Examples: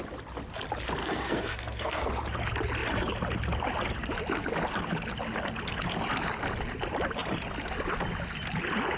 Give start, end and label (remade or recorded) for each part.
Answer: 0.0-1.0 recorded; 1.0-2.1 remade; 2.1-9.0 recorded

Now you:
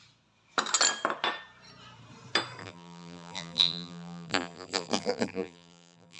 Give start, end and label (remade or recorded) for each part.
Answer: 0.0-2.6 recorded; 2.6-6.2 remade